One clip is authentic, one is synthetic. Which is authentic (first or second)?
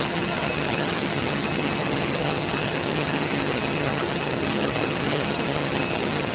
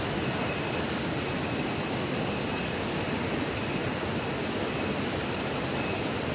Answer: second